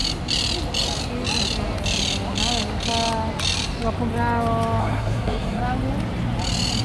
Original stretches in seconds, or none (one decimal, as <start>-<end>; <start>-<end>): 0.0-4.8; 5.6-6.8